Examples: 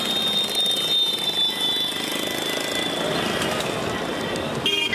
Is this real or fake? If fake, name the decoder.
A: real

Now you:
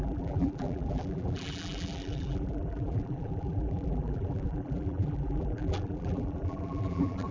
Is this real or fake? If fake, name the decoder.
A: fake, vocoder, BigVGAN v2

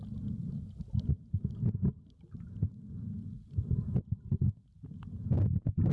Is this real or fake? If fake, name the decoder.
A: real